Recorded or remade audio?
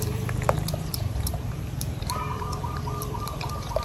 remade